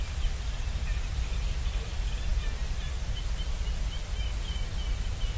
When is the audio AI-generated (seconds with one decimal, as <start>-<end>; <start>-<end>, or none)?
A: none